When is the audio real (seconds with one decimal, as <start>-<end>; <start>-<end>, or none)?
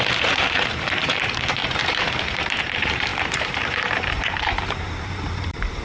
none